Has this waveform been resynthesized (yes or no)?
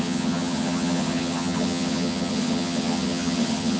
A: yes